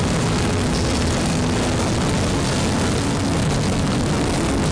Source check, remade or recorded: recorded